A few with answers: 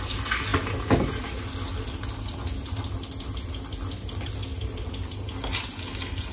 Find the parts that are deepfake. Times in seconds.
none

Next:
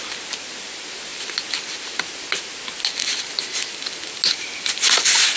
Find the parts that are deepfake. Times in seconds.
none

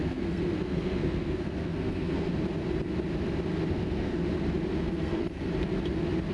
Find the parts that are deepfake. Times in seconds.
0.0-2.3; 3.7-4.2; 4.8-5.5

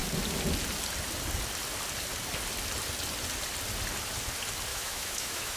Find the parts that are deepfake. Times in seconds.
4.7-5.6

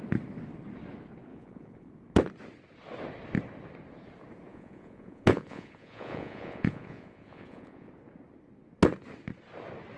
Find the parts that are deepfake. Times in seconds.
1.3-1.9; 4.5-7.9